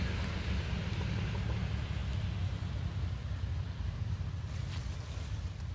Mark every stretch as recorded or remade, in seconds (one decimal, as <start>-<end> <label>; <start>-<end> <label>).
0.0-5.7 recorded